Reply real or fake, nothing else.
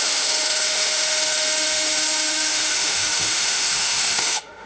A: fake